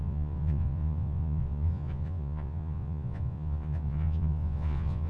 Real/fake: fake